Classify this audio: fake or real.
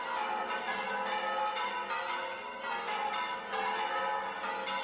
real